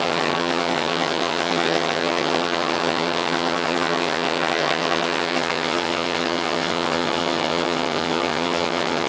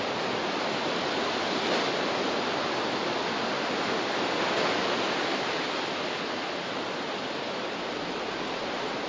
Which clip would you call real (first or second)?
second